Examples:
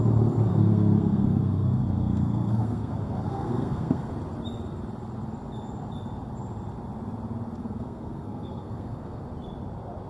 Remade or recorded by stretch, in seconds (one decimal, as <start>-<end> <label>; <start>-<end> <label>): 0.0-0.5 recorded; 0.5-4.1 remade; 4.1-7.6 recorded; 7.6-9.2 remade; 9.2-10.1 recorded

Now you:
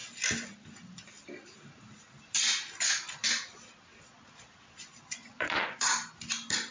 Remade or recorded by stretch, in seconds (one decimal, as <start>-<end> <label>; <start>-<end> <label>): 0.0-4.0 recorded; 4.0-5.9 remade; 5.9-6.7 recorded

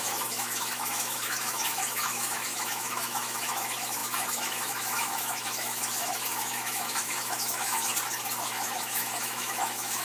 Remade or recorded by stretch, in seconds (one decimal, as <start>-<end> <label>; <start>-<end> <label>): 0.0-7.9 remade; 7.9-8.4 recorded; 8.4-10.0 remade